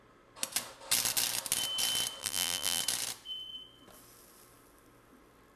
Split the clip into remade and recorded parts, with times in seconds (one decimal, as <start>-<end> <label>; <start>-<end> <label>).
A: 0.0-2.2 recorded; 2.2-2.8 remade; 2.8-5.6 recorded